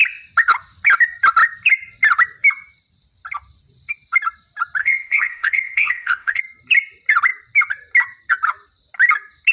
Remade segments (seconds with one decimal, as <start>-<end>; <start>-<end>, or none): 4.8-6.4